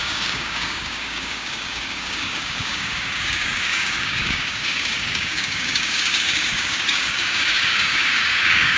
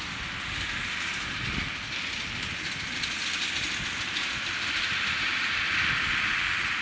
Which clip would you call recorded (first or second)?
second